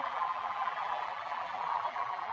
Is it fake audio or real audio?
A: fake